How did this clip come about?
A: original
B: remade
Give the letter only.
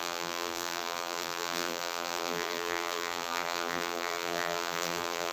B